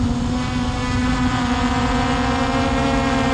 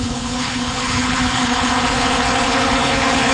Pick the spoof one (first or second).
second